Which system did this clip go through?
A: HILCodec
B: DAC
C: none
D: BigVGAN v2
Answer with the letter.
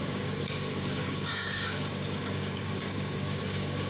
B